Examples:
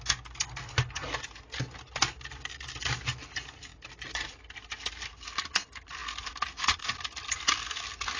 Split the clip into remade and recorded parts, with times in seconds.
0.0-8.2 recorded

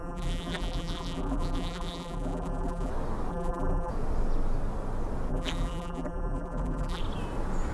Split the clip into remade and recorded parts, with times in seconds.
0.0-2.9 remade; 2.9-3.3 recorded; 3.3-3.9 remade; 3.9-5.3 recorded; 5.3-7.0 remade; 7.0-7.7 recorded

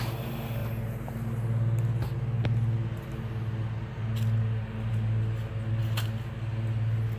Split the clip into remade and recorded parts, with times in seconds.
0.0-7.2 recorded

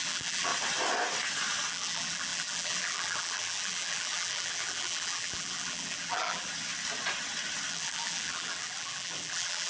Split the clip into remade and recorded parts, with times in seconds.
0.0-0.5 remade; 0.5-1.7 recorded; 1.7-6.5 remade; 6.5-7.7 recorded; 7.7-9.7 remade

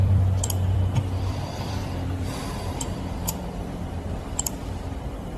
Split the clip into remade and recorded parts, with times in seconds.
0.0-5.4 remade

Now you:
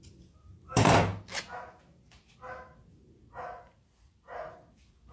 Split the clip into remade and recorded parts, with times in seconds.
0.0-1.1 remade; 1.1-3.0 recorded; 3.0-5.1 remade

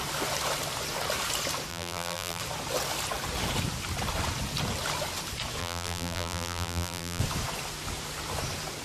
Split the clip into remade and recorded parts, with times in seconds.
0.0-1.7 recorded; 1.7-2.4 remade; 2.4-5.6 recorded; 5.6-7.2 remade; 7.2-8.8 recorded